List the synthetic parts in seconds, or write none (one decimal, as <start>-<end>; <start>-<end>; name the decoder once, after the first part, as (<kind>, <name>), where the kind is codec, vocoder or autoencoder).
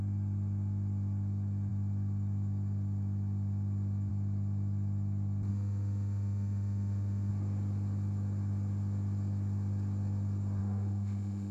5.5-7.3 (autoencoder, DAC-VAE); 10.6-11.5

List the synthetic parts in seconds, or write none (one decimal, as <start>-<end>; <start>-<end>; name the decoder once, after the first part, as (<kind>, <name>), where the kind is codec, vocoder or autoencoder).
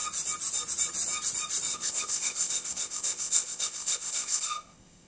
1.7-5.1 (codec, ZipCodec)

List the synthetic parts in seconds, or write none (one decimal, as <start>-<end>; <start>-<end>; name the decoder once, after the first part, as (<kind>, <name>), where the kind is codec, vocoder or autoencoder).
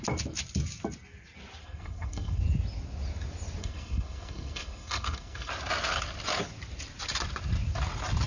1.6-2.4 (codec, SNAC); 3.6-5.5